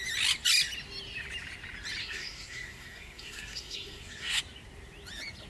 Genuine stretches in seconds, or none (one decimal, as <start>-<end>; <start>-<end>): 0.0-2.0; 4.4-5.5